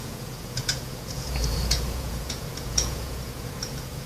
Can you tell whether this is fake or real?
fake